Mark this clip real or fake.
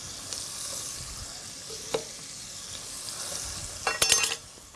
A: real